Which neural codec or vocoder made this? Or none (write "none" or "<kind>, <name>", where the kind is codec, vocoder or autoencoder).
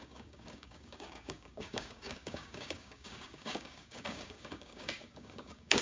codec, DAC